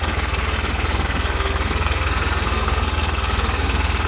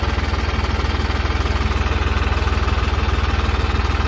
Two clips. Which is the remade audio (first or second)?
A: first